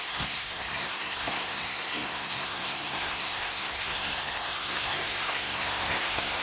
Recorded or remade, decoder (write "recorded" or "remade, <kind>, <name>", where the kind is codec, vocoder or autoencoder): remade, codec, SNAC